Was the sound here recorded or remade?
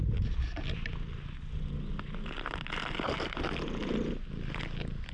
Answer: recorded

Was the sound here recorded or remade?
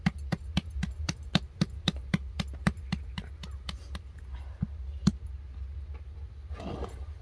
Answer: recorded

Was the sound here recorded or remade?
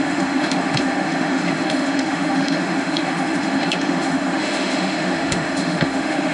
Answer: remade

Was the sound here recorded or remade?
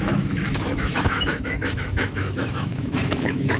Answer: remade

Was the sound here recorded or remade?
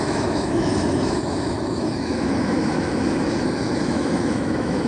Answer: remade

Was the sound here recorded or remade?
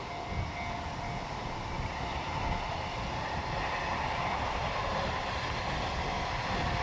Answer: recorded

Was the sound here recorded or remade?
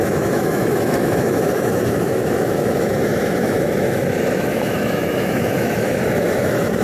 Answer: remade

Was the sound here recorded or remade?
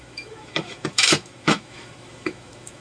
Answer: remade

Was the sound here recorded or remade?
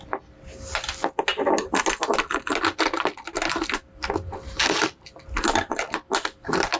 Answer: recorded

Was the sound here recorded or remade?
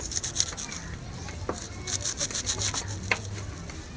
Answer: recorded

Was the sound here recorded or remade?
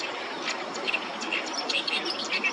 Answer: recorded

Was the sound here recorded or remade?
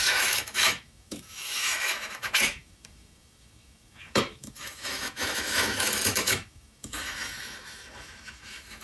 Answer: remade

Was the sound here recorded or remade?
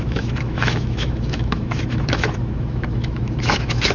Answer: remade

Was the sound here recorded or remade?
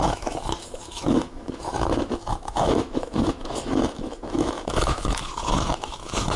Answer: remade